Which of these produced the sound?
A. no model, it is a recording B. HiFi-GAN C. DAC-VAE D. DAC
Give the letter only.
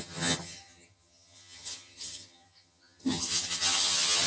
B